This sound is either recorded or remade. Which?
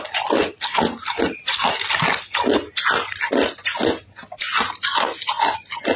recorded